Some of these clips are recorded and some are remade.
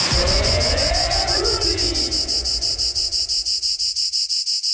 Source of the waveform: remade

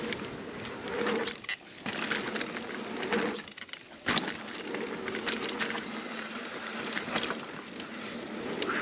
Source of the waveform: recorded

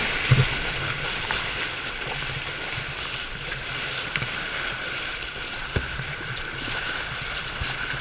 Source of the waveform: remade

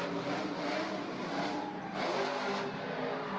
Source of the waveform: recorded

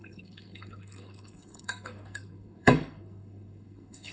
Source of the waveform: remade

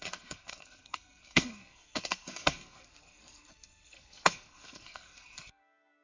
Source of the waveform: remade